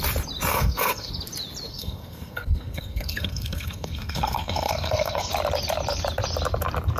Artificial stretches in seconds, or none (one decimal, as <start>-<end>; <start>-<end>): 0.5-1.1; 1.7-5.3